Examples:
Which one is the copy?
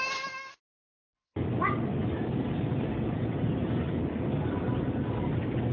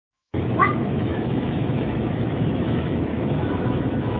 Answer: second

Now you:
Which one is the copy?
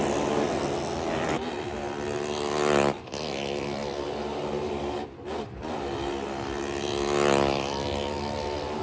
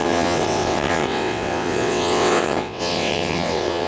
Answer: second